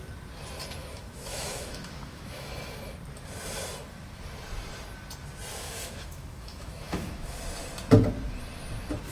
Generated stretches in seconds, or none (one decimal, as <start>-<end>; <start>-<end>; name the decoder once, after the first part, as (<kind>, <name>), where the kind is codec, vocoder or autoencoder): 0.8-2.5 (autoencoder, DAC-VAE); 5.5-7.4

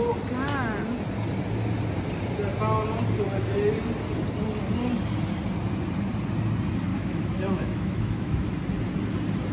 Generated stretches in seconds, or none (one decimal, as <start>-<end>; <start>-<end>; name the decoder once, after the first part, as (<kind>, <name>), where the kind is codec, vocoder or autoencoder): 6.9-8.5 (autoencoder, DAC-VAE)

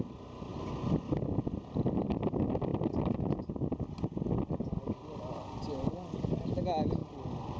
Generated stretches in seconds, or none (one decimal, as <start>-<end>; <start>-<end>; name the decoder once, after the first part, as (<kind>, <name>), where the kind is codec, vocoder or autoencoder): none

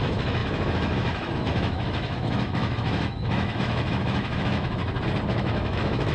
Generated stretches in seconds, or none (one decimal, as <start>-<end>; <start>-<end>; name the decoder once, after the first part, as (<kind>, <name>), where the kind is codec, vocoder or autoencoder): 0.0-4.8 (autoencoder, DAC-VAE); 5.3-6.1